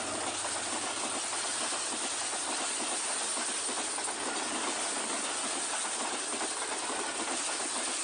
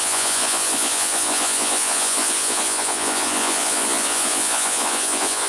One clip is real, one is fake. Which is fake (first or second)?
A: second